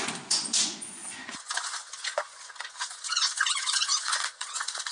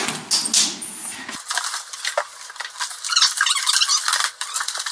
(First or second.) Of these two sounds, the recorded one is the second